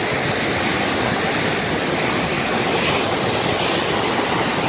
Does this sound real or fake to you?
real